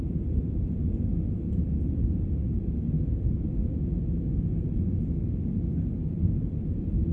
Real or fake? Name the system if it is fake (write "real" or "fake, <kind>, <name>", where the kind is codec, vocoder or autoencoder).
real